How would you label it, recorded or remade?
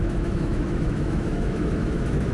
remade